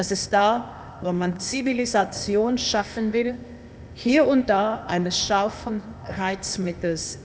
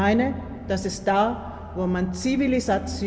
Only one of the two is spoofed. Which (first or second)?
first